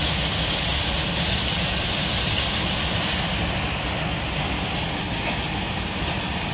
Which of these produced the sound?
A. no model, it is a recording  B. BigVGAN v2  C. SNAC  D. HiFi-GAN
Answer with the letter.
A